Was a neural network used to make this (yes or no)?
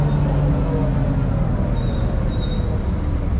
no